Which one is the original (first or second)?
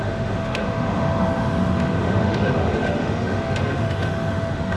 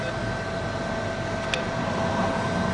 second